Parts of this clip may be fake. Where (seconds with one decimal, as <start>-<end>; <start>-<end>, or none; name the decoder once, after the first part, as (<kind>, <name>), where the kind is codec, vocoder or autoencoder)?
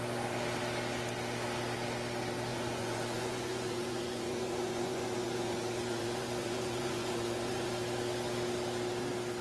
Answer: 2.5-7.7 (vocoder, Vocos)